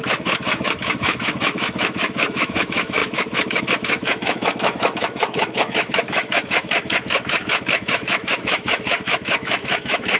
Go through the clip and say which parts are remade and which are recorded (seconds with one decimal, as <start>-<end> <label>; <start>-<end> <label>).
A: 0.0-10.2 remade